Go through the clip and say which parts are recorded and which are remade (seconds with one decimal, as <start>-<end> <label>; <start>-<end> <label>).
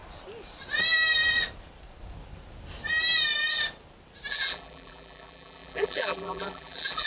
0.0-4.3 recorded; 4.3-7.1 remade